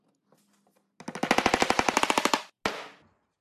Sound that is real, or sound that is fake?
real